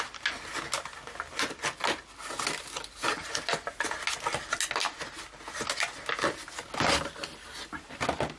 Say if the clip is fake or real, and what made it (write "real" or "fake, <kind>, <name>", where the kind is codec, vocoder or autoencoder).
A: real